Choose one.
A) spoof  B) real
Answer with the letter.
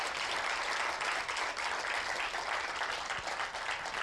B